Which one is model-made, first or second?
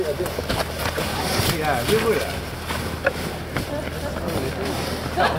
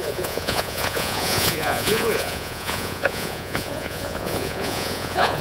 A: second